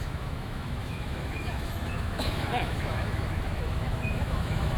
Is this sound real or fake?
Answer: fake